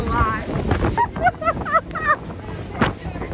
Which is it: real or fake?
real